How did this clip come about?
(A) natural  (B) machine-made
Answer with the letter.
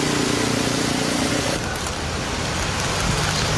A